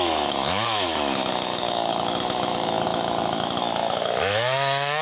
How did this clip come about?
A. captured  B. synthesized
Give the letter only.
B